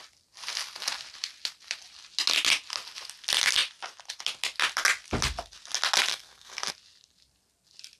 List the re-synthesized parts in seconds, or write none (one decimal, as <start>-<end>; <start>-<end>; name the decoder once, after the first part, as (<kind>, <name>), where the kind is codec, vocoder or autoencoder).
6.1-6.7 (codec, SNAC)